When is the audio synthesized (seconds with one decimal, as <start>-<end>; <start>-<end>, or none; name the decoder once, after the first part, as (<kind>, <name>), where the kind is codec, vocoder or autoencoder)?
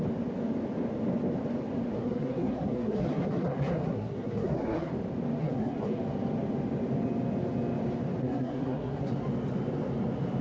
1.9-4.9 (codec, SNAC); 5.4-6.0; 8.2-9.1